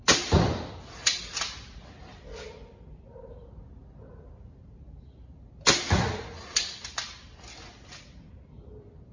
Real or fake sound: real